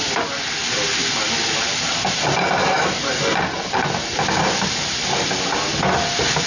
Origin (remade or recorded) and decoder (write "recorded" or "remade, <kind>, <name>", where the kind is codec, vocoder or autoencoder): recorded